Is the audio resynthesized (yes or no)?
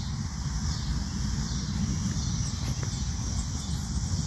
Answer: no